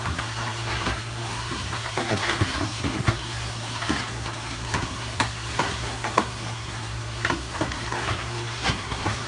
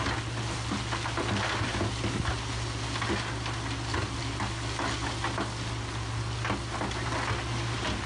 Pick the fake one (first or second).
first